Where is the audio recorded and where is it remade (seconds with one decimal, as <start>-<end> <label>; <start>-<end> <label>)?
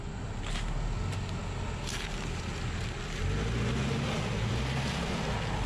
0.0-5.7 recorded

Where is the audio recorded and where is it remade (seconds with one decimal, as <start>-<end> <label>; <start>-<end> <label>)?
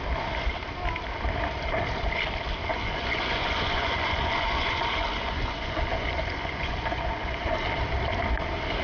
0.0-2.7 recorded; 2.7-7.4 remade; 7.4-8.8 recorded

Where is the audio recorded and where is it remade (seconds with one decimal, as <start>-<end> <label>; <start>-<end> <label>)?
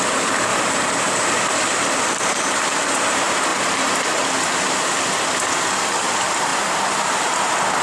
0.0-0.5 recorded; 0.5-2.5 remade; 2.5-6.5 recorded; 6.5-7.1 remade; 7.1-7.8 recorded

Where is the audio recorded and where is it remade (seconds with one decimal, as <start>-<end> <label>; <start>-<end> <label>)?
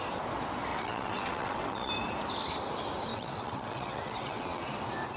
0.0-0.7 recorded; 0.7-1.9 remade; 1.9-3.1 recorded; 3.1-4.7 remade; 4.7-5.2 recorded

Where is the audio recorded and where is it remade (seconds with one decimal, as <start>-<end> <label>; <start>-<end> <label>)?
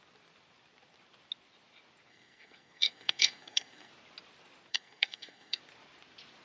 0.0-2.1 recorded; 2.1-3.9 remade; 3.9-4.7 recorded; 4.7-5.6 remade; 5.6-6.4 recorded